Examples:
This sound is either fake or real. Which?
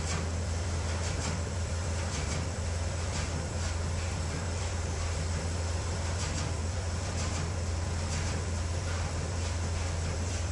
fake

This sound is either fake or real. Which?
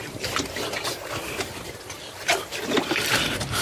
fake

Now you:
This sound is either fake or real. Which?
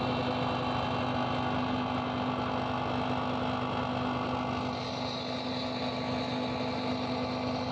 real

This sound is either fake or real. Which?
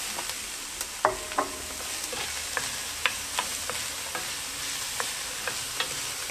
real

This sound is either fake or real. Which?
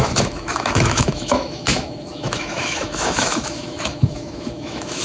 fake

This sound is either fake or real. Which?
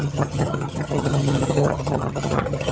fake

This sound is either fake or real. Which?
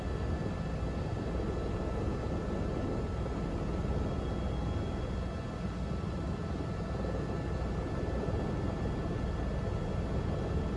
real